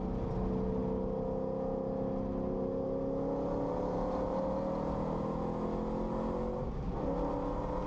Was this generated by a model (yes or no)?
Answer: no